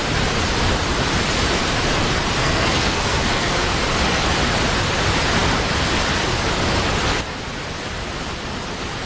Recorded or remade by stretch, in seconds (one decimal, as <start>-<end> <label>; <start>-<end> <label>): 0.0-2.4 recorded; 2.4-3.7 remade; 3.7-9.1 recorded